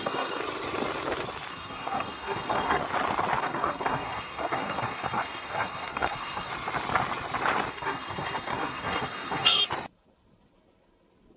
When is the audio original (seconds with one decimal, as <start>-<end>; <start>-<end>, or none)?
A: 0.4-1.5; 2.8-3.4; 6.5-7.7; 9.6-11.4